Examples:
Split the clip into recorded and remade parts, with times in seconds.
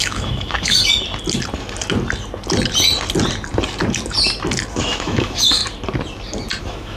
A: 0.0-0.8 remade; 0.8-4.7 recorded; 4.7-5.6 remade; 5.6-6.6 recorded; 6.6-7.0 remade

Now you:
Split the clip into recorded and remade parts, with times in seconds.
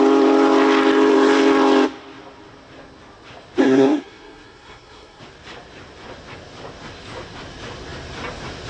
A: 0.0-3.6 recorded; 3.6-5.2 remade; 5.2-8.7 recorded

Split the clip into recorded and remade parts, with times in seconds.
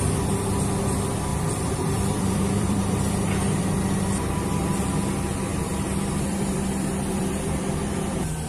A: 0.0-1.3 recorded; 1.3-3.8 remade; 3.8-5.5 recorded; 5.5-8.5 remade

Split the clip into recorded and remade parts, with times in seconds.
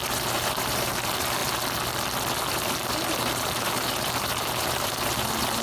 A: 0.0-1.4 remade; 1.4-2.5 recorded; 2.5-5.6 remade